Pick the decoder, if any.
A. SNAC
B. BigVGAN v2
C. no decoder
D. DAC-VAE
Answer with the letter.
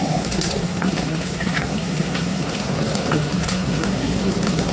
A